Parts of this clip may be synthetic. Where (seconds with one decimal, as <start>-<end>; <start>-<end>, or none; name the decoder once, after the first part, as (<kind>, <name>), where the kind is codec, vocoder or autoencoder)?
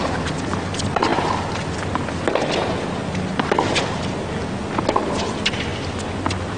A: none